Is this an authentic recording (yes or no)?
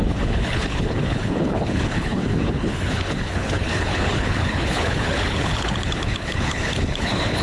no